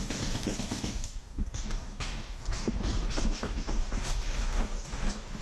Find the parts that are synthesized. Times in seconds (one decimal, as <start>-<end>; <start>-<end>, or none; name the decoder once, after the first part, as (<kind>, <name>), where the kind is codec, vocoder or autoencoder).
0.0-5.4 (codec, DAC)